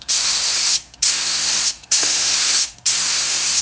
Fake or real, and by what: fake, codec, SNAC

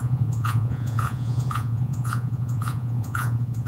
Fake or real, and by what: fake, vocoder, Vocos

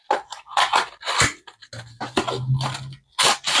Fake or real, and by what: real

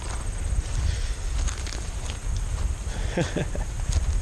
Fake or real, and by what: real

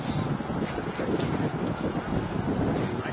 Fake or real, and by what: real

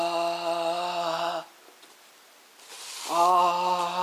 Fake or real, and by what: real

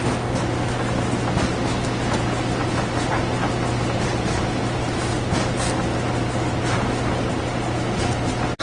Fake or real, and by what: real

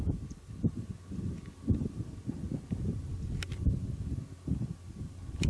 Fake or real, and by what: real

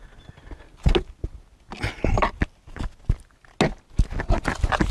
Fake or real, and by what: real